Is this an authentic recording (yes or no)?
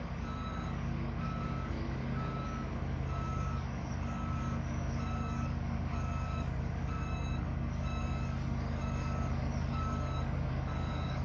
no